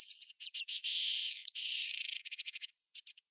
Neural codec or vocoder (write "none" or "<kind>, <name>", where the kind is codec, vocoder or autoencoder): vocoder, Vocos